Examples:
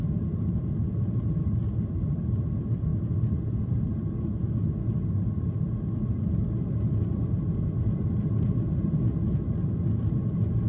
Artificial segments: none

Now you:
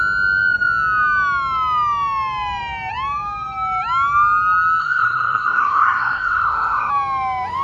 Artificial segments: 4.8-6.9 (codec, SNAC)

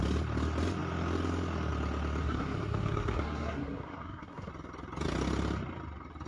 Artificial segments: 2.2-4.5 (codec, SNAC)

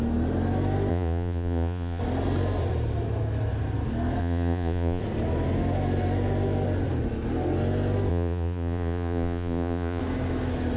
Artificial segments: 0.9-2.0 (vocoder, Vocos); 4.2-5.0; 8.1-10.0